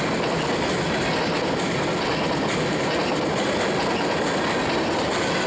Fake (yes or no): no